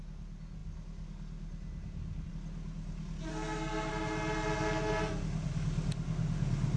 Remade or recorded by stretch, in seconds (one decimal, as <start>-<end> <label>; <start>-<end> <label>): 0.0-3.3 recorded; 3.3-3.9 remade; 3.9-6.8 recorded